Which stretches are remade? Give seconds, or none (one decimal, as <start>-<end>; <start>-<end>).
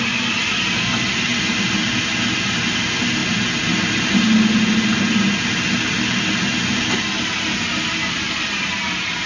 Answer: none